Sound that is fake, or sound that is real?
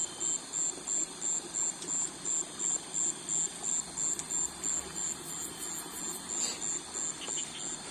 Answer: real